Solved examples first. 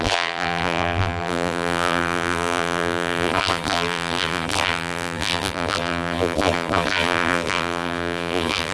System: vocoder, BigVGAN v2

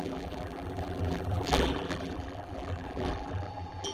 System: vocoder, BigVGAN v2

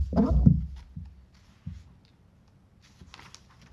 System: none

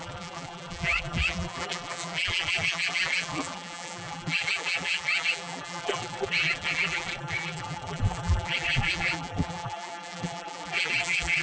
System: vocoder, BigVGAN v2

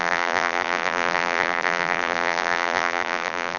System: vocoder, BigVGAN v2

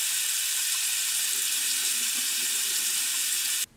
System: vocoder, BigVGAN v2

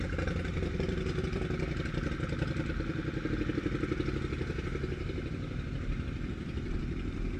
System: vocoder, BigVGAN v2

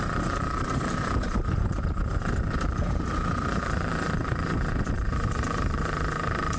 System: vocoder, BigVGAN v2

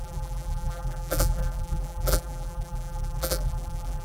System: vocoder, BigVGAN v2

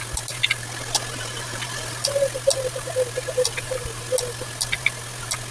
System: none